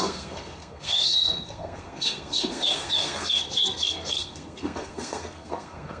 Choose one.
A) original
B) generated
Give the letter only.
B